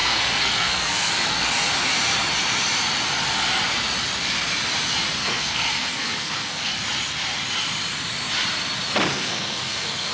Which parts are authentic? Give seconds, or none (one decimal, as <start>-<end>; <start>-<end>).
1.1-5.2; 6.7-9.1